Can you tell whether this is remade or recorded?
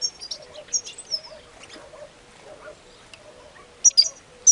recorded